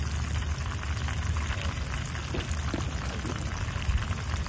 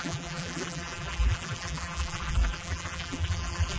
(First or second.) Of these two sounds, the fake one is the second